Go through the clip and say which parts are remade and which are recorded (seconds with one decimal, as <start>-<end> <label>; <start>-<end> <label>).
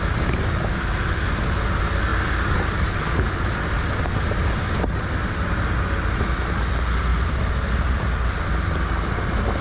0.0-2.1 recorded; 2.1-3.1 remade; 3.1-7.1 recorded; 7.1-8.7 remade; 8.7-9.6 recorded